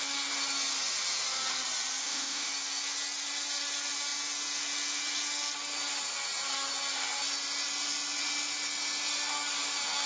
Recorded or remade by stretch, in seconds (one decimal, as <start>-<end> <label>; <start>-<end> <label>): 0.0-2.0 recorded; 2.0-2.5 remade; 2.5-10.1 recorded